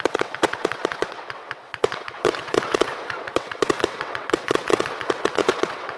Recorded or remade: remade